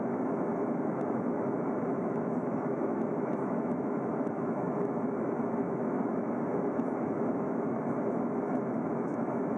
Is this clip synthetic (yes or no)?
yes